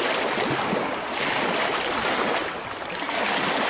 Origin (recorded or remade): recorded